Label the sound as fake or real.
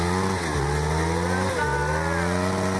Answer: real